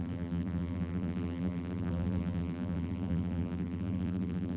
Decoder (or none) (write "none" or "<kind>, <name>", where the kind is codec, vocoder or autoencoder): vocoder, BigVGAN v2